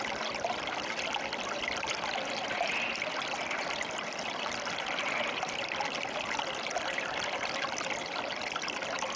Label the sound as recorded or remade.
recorded